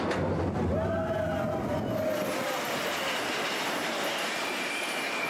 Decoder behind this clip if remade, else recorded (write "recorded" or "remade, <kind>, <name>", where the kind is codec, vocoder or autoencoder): recorded